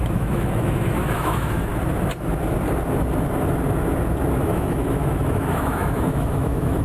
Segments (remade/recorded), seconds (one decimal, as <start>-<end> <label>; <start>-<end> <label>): 0.0-1.7 remade; 1.7-4.4 recorded; 4.4-6.8 remade